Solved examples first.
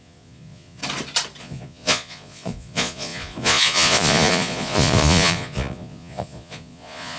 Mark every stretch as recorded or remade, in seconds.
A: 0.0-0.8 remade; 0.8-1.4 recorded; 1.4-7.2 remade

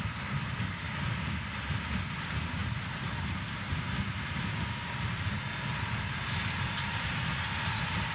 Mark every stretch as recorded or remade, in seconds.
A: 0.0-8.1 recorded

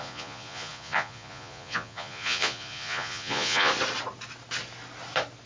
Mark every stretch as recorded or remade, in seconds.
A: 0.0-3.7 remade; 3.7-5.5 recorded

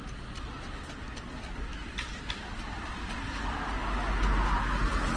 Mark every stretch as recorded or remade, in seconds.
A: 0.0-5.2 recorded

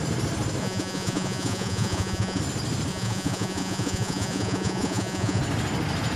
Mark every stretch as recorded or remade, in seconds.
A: 0.0-0.6 recorded; 0.6-2.4 remade; 2.4-2.9 recorded; 2.9-5.4 remade; 5.4-6.2 recorded